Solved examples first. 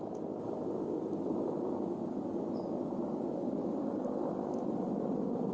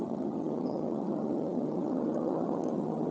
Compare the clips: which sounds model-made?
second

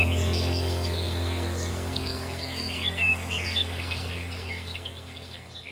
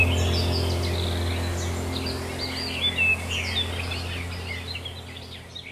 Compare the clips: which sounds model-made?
first